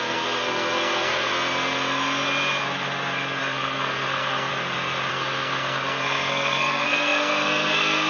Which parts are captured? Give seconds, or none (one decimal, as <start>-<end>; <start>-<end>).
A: 1.3-3.4; 4.5-5.1